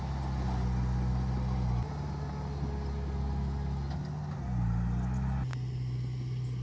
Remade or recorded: recorded